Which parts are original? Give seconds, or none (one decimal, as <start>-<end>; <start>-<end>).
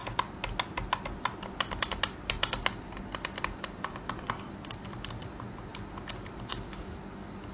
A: 0.0-7.5